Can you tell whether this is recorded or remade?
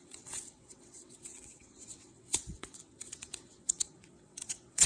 remade